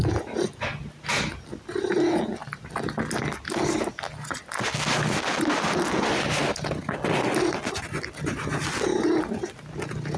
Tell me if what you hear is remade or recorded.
recorded